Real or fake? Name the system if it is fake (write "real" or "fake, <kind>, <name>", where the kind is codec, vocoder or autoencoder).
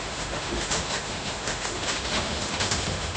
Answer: fake, autoencoder, DAC-VAE